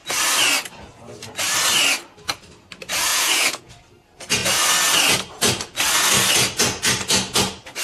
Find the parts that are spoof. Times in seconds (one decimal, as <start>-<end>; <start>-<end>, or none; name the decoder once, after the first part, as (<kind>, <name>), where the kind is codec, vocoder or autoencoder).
3.1-3.7 (vocoder, Vocos)